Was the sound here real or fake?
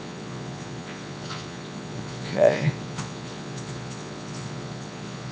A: fake